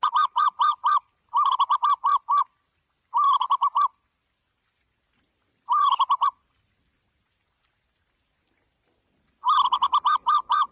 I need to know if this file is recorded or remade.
recorded